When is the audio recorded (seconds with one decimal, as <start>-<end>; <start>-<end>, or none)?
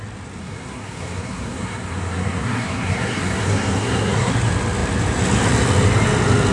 0.0-0.4; 4.3-6.5